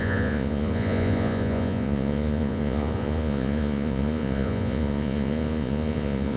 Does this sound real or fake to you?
fake